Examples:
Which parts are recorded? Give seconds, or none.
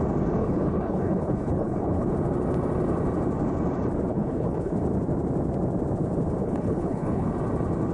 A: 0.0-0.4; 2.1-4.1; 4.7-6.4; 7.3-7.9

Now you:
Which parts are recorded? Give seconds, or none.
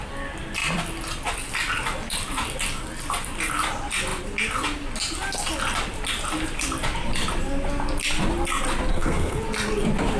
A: 0.0-8.9; 9.4-10.2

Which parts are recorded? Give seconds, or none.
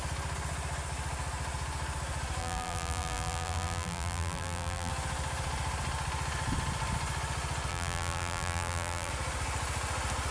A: 0.0-2.4; 4.9-7.7; 9.1-10.3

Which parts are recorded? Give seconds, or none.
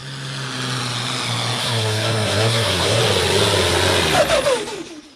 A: 0.0-1.6; 3.0-5.2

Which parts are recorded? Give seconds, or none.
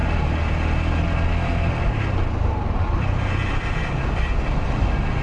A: 0.0-5.2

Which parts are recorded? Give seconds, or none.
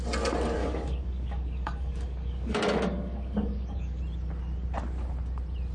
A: 0.0-0.6; 4.0-5.7